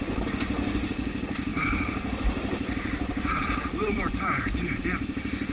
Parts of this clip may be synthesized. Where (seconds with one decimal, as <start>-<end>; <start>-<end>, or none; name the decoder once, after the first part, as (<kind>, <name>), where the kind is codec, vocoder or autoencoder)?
1.5-4.8 (vocoder, BigVGAN v2)